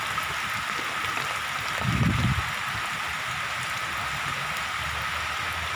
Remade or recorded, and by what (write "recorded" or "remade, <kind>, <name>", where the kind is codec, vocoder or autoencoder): recorded